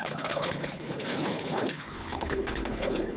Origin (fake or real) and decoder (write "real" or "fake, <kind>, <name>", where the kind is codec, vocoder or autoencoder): fake, codec, HILCodec